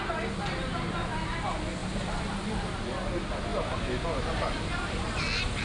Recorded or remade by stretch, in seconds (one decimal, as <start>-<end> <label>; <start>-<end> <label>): 0.0-5.6 recorded